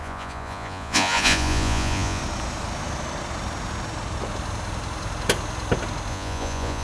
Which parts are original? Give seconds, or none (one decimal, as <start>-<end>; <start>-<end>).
2.2-6.1